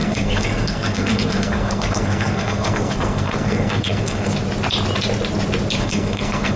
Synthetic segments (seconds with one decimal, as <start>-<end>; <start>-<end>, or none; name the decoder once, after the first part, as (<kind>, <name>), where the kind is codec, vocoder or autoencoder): 0.0-4.3 (codec, SNAC); 5.8-6.6